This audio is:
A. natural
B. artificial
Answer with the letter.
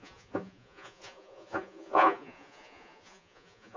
B